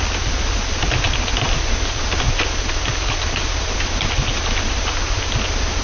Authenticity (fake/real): real